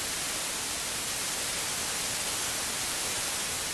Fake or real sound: real